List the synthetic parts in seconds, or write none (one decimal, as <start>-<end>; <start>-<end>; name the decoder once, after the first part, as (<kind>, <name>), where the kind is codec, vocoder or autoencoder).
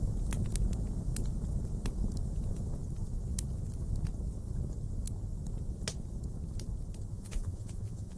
7.1-8.2 (vocoder, Vocos)